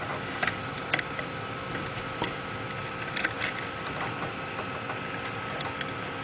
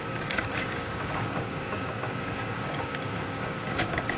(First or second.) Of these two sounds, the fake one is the second